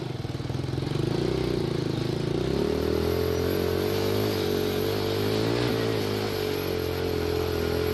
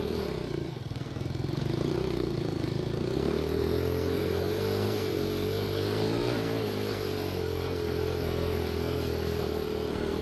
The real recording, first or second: first